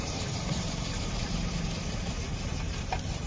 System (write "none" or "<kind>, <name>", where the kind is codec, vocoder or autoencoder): vocoder, BigVGAN v2